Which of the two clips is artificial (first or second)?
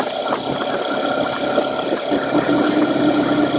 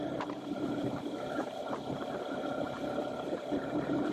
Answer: second